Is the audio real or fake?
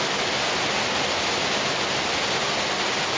real